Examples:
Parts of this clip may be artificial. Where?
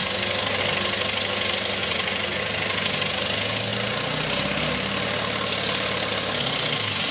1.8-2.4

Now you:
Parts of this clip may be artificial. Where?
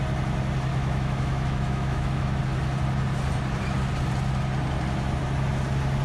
0.7-2.4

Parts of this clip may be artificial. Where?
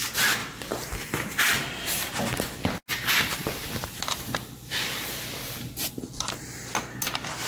0.4-1.1; 3.4-5.0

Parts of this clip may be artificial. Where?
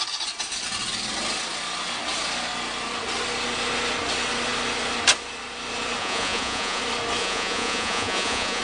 6.0-6.8; 7.2-8.6